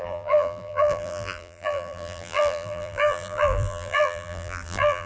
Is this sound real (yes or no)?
no